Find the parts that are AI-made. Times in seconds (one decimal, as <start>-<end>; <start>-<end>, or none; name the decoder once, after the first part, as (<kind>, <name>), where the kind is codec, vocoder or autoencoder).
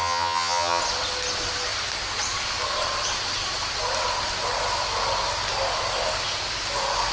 0.0-0.8 (vocoder, HiFi-GAN)